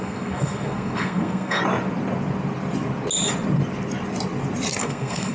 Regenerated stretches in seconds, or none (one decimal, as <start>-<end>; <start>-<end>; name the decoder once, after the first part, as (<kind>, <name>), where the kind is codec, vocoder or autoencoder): 0.0-1.6 (codec, SNAC); 4.8-5.3